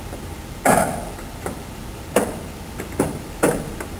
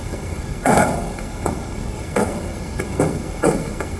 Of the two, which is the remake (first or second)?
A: second